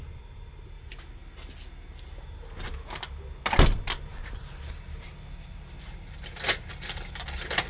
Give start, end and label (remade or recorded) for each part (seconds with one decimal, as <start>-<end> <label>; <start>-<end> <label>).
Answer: 0.0-7.7 recorded